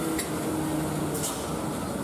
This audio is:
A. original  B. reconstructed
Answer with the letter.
A